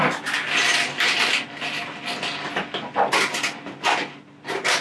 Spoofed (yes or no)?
no